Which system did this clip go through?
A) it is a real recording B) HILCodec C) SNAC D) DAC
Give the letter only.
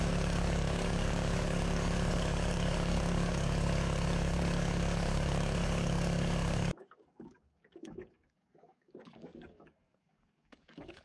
D